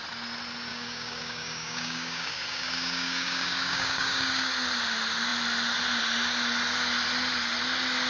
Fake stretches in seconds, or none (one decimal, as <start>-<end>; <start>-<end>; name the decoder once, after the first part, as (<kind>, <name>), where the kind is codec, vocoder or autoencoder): 0.7-4.5 (codec, DAC)

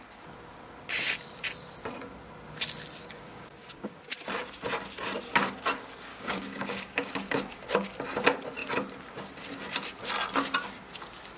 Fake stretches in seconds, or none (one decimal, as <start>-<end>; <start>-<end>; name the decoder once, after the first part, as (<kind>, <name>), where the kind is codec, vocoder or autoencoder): 3.0-4.0 (codec, DAC); 6.1-7.1

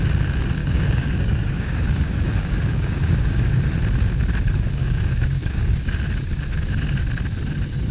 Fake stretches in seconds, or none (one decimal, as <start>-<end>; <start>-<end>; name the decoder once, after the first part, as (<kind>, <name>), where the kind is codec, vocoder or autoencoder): 0.6-3.6 (codec, DAC); 4.8-5.8

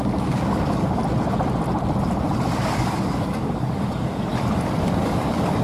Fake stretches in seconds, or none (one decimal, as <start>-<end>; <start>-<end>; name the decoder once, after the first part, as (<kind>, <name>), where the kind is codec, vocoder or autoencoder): 0.0-1.0 (codec, DAC); 2.6-4.3; 4.8-5.6

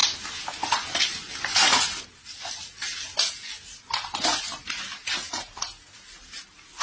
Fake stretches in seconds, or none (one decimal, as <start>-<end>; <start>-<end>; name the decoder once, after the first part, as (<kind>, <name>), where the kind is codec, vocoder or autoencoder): none

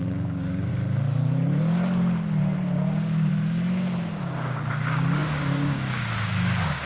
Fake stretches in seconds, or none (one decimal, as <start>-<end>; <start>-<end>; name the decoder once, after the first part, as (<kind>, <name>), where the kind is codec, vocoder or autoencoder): 0.0-0.7 (codec, DAC); 2.4-3.3; 4.2-6.9